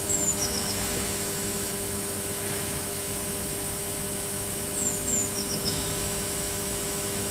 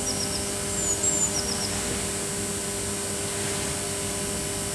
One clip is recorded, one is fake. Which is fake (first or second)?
first